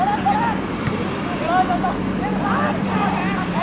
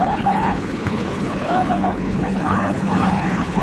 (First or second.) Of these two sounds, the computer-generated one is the second